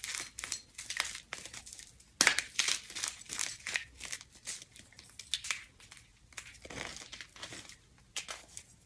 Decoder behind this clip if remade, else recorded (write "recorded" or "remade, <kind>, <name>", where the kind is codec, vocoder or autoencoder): recorded